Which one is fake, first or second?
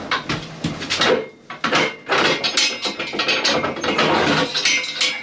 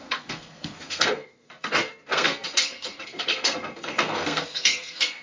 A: second